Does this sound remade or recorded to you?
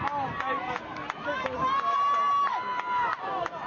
recorded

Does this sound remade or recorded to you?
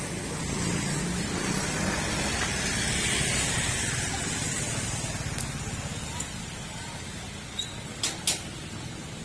recorded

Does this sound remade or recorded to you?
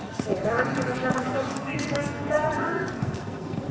remade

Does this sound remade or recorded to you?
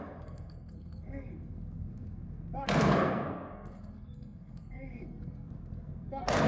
remade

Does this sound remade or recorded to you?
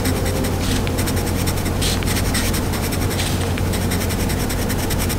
recorded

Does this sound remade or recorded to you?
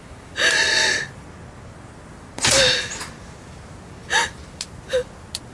recorded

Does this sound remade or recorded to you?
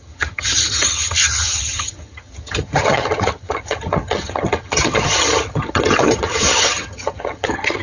remade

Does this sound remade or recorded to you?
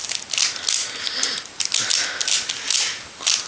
recorded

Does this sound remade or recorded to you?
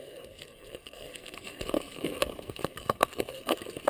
remade